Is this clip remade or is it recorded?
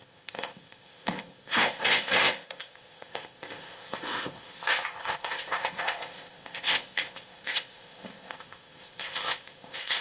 remade